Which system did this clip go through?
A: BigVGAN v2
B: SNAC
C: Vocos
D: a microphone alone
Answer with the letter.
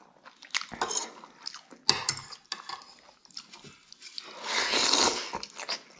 D